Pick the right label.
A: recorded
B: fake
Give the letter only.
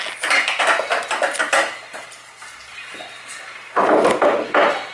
A